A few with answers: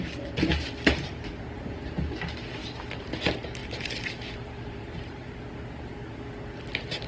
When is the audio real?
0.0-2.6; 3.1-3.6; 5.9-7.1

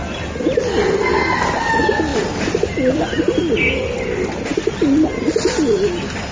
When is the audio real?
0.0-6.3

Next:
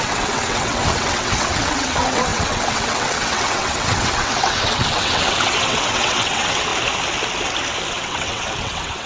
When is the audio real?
6.7-7.9

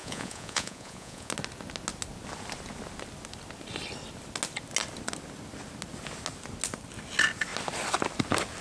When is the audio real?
1.3-8.6

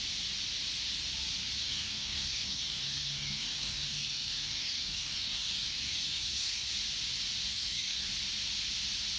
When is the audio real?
0.0-1.6; 6.7-7.5; 8.1-9.2

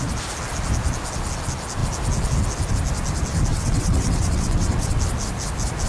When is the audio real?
0.0-3.5; 5.0-5.9